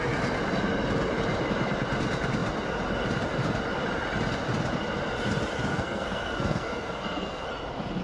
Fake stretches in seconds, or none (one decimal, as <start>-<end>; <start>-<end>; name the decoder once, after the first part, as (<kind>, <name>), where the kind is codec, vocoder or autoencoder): 5.7-7.5 (codec, SNAC)